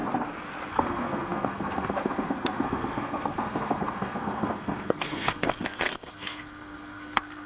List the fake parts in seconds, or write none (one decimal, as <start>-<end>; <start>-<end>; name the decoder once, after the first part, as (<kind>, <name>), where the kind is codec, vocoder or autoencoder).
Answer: 0.7-7.5 (codec, SNAC)